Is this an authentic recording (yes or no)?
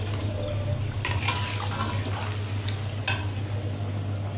yes